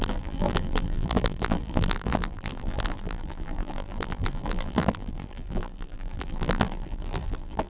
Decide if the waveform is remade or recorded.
remade